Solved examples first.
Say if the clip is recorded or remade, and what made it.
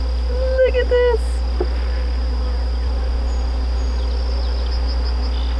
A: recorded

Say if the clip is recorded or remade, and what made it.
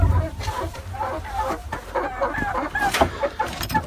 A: remade, vocoder, BigVGAN v2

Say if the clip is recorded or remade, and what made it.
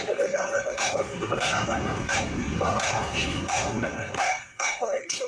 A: remade, codec, SNAC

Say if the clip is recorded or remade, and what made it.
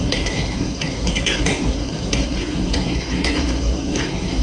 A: remade, codec, SNAC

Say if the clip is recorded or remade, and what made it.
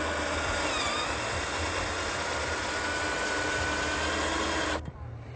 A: recorded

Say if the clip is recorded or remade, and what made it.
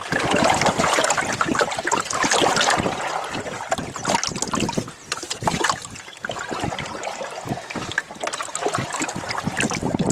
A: recorded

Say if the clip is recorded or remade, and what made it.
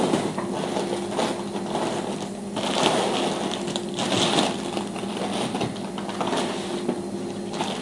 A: recorded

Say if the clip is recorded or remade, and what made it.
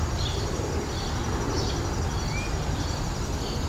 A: recorded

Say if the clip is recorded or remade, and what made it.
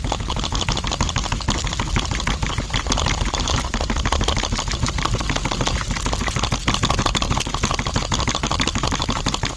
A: recorded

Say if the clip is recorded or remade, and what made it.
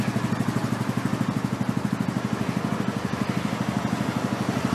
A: recorded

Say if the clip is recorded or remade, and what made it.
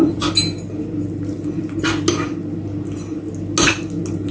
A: recorded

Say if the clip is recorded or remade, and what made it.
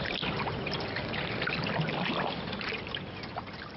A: recorded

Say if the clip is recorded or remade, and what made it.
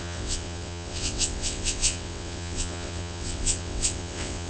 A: remade, vocoder, WaveNeXt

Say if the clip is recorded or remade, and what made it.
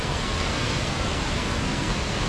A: remade, codec, SNAC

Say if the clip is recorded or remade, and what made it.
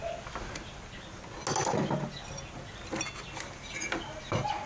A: recorded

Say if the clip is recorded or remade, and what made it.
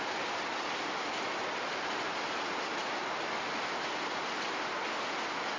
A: recorded